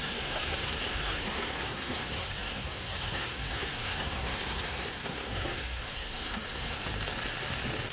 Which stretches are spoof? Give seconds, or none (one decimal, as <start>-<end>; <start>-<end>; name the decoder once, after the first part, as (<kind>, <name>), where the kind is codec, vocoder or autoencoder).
0.0-6.8 (codec, SNAC)

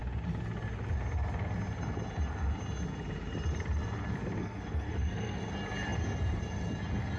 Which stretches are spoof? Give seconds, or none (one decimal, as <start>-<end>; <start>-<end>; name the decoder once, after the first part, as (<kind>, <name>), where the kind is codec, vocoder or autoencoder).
4.4-5.4 (codec, SNAC)